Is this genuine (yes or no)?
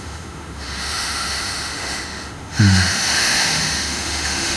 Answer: no